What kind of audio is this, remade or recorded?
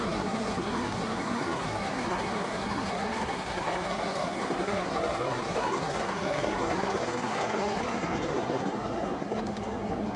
remade